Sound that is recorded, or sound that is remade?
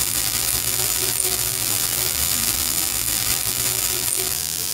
remade